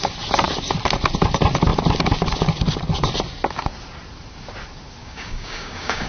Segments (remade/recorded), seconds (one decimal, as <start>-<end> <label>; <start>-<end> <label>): 0.0-5.0 recorded; 5.0-6.1 remade